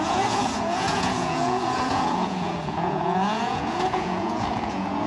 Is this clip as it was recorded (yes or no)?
no